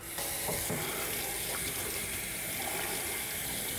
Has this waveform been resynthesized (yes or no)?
yes